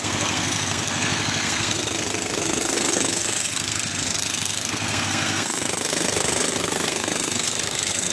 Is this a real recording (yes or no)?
no